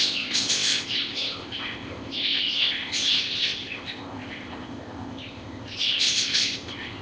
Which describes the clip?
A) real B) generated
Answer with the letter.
B